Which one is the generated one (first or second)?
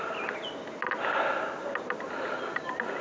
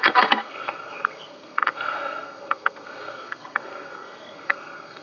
second